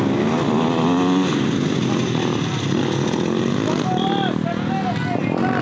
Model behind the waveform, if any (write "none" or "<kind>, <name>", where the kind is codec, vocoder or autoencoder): none